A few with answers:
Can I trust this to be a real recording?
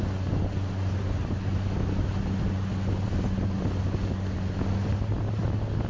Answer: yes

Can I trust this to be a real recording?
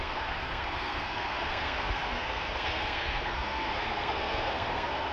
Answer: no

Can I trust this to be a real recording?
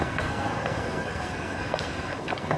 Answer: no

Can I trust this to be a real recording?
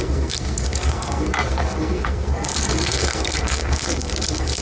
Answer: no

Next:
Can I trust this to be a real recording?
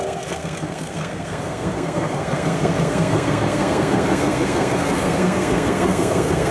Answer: no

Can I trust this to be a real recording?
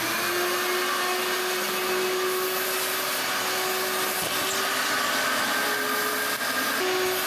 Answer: yes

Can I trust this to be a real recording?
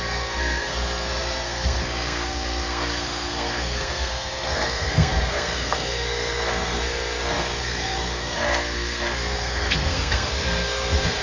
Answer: no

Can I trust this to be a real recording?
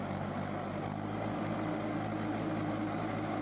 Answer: yes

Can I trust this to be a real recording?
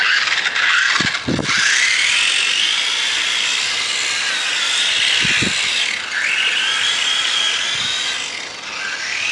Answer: yes